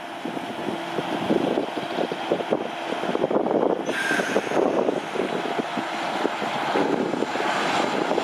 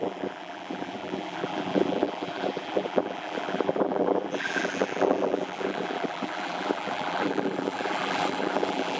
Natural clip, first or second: first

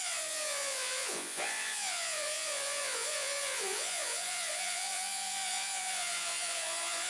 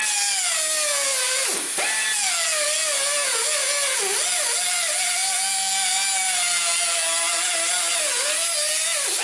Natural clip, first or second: second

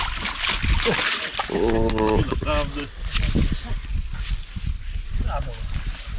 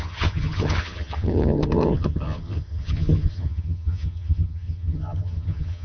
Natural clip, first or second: first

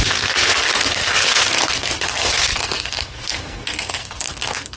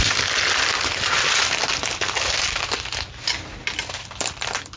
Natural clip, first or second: second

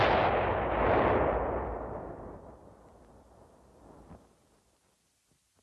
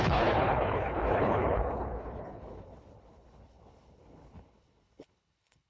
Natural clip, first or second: first